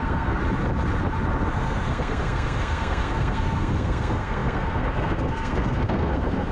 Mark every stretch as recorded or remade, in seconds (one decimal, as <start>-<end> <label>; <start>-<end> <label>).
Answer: 0.0-0.4 remade; 0.4-1.5 recorded; 1.5-6.5 remade

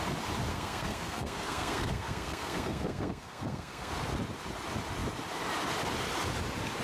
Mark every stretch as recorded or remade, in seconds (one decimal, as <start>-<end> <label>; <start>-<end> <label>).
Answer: 0.0-0.5 recorded; 0.5-3.9 remade; 3.9-6.8 recorded